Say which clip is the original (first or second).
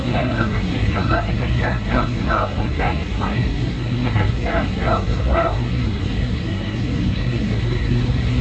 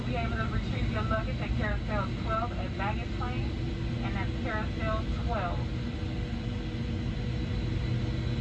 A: second